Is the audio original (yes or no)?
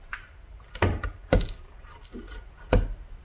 yes